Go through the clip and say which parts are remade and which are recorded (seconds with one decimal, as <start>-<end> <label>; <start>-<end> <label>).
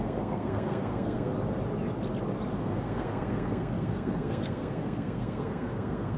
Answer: 0.0-1.3 remade; 1.3-2.6 recorded; 2.6-6.2 remade